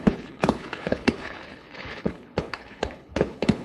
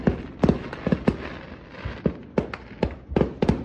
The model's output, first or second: first